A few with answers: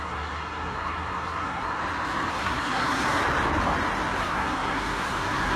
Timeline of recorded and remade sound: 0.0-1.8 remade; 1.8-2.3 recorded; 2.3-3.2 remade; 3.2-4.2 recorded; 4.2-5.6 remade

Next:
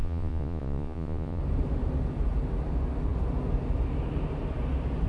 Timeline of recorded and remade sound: 0.0-1.4 remade; 1.4-5.1 recorded

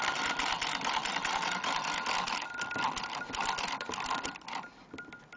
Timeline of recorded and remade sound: 0.0-5.4 remade

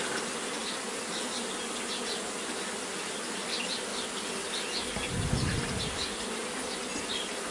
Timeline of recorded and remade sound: 0.0-7.5 recorded

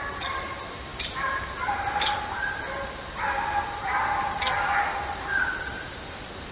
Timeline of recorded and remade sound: 0.0-6.5 recorded